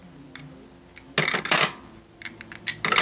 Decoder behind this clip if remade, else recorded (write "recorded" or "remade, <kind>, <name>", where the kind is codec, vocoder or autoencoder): recorded